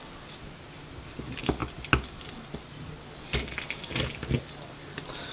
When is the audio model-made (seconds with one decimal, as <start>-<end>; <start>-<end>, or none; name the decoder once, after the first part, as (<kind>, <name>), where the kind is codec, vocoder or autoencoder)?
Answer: none